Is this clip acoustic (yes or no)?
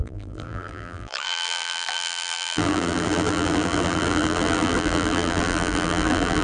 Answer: no